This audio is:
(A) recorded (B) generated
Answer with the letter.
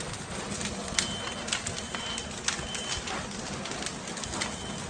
A